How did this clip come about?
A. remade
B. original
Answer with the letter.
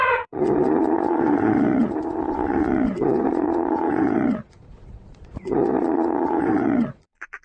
A